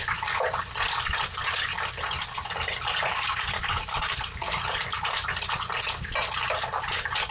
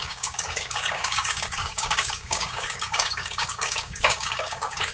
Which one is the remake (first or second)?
second